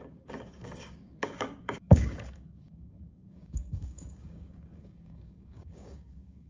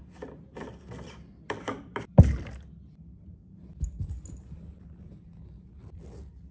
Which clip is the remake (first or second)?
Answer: first